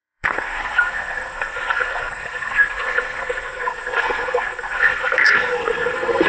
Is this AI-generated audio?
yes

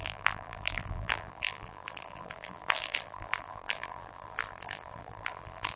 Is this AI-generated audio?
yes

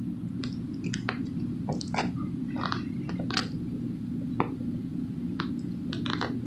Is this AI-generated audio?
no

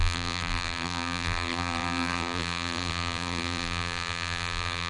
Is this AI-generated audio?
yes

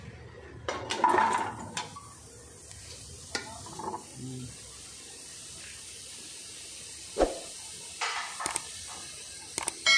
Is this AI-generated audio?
no